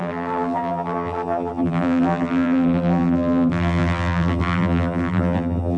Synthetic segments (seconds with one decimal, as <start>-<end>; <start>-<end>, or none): 0.0-5.8